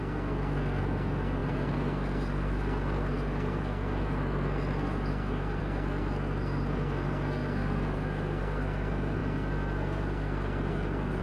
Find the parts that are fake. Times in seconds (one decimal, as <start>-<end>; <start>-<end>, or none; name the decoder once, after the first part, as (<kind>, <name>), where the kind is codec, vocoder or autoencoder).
0.0-11.2 (codec, SNAC)